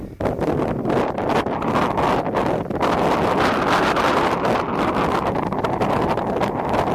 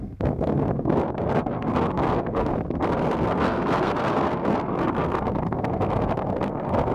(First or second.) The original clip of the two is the first